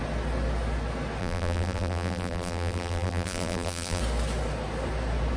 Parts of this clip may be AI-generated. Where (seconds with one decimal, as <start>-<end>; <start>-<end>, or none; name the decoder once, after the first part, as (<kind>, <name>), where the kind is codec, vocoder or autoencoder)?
1.2-4.0 (vocoder, BigVGAN v2)